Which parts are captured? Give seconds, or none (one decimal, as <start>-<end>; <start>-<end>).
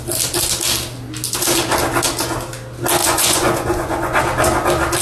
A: 0.0-3.0; 4.2-5.0